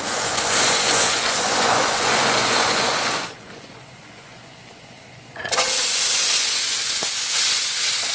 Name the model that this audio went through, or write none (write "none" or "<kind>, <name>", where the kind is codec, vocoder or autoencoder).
vocoder, Vocos